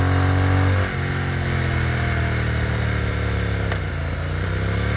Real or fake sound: real